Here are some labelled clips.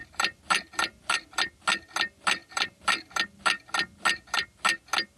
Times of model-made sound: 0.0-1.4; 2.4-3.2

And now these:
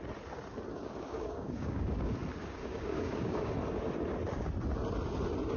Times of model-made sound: 0.7-2.1; 2.6-3.5